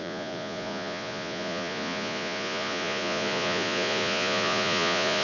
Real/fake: fake